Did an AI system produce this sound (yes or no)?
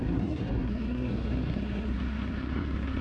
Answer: yes